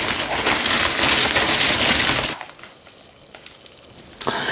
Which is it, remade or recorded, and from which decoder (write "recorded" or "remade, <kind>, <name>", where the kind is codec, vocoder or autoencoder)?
recorded